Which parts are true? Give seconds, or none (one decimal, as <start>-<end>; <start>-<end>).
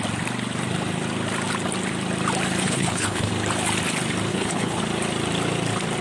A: 0.0-2.6; 3.3-4.3; 4.8-6.0